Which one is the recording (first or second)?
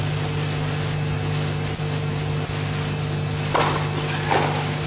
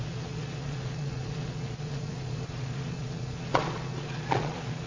first